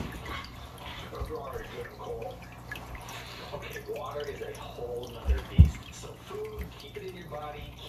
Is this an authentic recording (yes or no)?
no